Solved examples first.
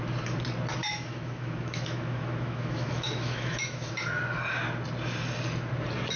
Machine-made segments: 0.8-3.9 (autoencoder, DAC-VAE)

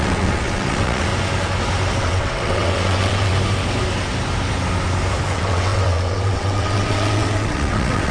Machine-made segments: 0.0-1.1 (vocoder, WaveNeXt); 2.0-3.3; 5.3-8.1

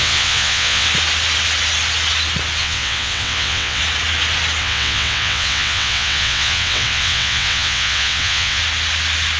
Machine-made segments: 0.0-0.9 (vocoder, WaveNeXt); 2.6-3.8; 4.6-8.6

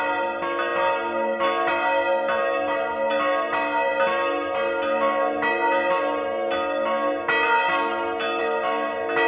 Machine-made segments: none